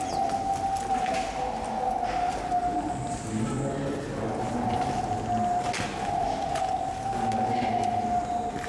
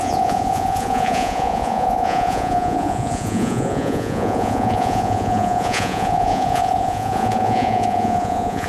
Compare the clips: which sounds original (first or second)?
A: first